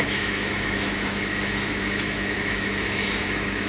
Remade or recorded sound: remade